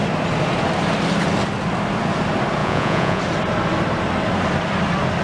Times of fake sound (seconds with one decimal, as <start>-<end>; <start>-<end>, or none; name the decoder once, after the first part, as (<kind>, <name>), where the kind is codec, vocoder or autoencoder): 2.6-3.2 (vocoder, Vocos)

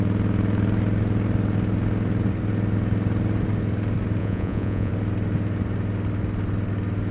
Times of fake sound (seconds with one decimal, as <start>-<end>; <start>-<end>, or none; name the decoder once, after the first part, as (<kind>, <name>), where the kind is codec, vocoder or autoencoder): 4.2-4.9 (vocoder, Vocos)

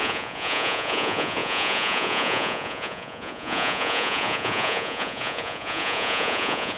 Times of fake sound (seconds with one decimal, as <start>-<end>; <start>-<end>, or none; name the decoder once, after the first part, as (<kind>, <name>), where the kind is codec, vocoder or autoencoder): 0.0-6.8 (vocoder, Vocos)

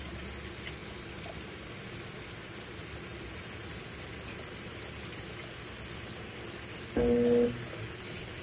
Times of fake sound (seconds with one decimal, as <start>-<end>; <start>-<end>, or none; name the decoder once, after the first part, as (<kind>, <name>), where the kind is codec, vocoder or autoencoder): none

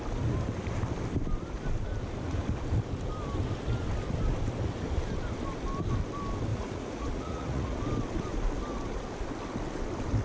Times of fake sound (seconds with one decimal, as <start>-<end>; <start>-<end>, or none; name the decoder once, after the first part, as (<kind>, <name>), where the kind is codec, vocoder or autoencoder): 6.5-7.8 (vocoder, Vocos)